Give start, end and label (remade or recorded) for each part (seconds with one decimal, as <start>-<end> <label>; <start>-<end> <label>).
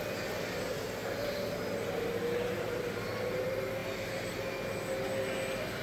0.0-5.8 recorded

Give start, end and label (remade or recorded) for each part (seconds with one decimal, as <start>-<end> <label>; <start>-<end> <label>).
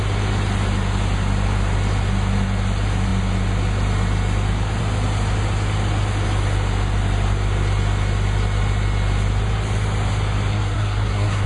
0.0-10.5 recorded; 10.5-11.5 remade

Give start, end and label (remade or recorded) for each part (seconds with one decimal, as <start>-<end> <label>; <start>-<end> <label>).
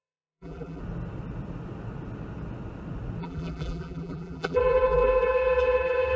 0.0-0.8 remade; 0.8-3.2 recorded; 3.2-6.2 remade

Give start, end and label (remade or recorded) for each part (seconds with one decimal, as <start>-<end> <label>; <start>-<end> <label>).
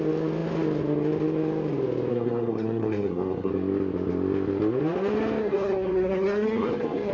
0.0-2.1 recorded; 2.1-3.5 remade; 3.5-5.4 recorded; 5.4-7.1 remade